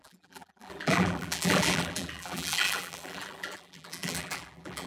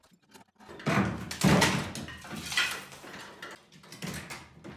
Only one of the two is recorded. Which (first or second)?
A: second